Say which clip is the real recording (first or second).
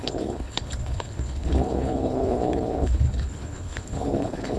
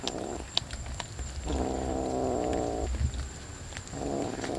second